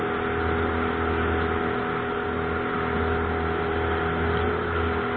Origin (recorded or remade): recorded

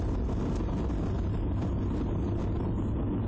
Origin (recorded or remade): recorded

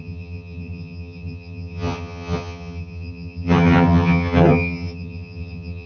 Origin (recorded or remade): remade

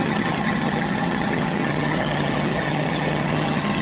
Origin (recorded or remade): remade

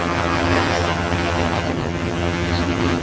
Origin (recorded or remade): remade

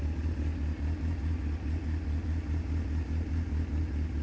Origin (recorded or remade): recorded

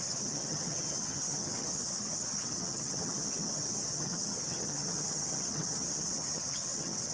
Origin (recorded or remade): remade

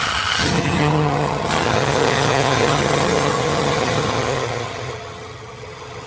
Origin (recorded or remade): remade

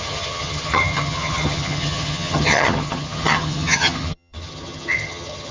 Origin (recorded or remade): remade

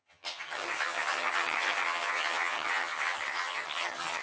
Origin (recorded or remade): remade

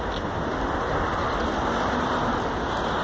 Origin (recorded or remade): recorded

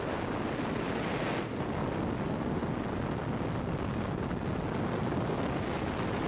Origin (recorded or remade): recorded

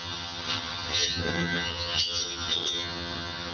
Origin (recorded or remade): remade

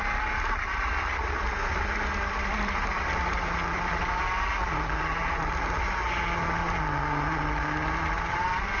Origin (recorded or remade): recorded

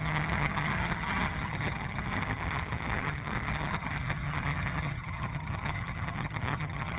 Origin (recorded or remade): remade